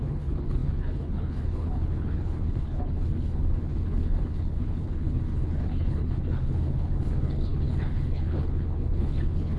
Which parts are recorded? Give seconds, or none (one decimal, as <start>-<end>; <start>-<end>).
none